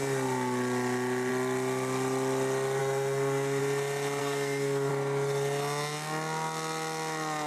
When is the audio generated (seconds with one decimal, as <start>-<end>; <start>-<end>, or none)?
2.8-3.6; 4.2-4.9